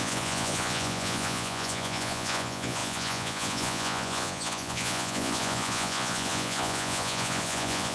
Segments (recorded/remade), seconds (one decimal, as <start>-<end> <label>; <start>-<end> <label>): 0.0-7.9 remade